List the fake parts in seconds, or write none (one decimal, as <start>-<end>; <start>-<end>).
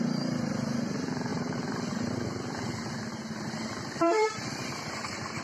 0.0-5.4